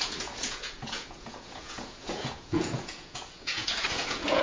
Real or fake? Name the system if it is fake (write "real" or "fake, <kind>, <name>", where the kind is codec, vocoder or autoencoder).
fake, vocoder, Vocos